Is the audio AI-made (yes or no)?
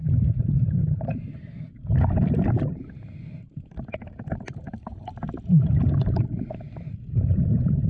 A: yes